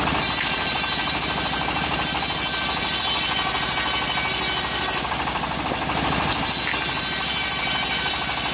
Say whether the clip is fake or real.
real